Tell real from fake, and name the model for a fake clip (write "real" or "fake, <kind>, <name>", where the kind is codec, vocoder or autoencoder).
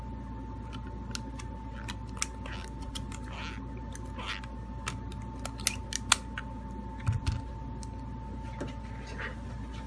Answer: real